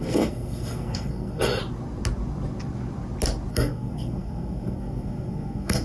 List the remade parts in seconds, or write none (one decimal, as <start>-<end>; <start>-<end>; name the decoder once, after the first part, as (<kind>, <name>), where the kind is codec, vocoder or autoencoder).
0.0-1.6 (codec, SNAC); 3.5-5.8